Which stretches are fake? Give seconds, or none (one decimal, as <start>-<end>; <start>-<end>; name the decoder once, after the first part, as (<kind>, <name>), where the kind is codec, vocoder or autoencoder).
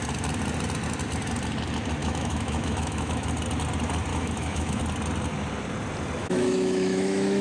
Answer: 2.0-3.3 (autoencoder, DAC-VAE); 4.1-4.8; 6.2-7.4